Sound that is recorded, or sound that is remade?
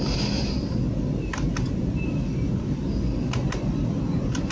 recorded